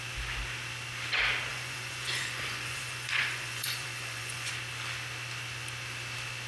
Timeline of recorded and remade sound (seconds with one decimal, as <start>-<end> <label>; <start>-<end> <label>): 0.0-1.5 recorded; 1.5-4.5 remade; 4.5-6.5 recorded